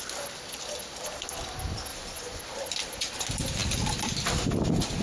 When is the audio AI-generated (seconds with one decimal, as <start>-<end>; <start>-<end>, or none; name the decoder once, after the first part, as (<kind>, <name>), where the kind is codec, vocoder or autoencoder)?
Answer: 1.9-2.4 (vocoder, Vocos)